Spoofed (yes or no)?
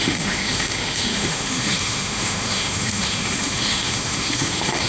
yes